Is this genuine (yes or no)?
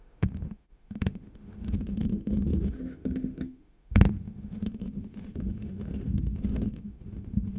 no